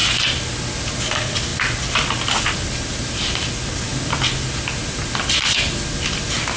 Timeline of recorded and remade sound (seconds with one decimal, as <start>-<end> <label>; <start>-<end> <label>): 0.0-6.6 recorded